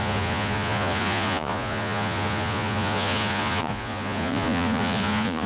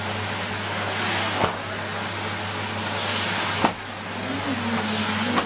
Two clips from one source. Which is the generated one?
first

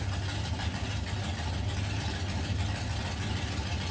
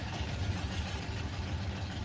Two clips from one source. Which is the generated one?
second